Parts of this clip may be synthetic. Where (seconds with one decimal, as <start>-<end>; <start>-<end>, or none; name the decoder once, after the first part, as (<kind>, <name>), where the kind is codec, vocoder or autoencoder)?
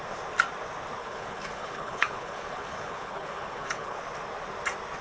1.0-4.0 (codec, HILCodec)